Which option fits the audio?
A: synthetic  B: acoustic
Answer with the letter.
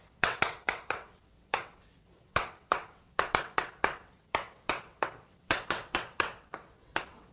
A